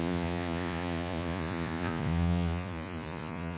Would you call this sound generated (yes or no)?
yes